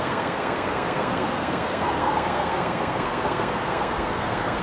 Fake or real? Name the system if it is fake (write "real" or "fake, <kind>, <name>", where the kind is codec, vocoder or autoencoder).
fake, codec, SNAC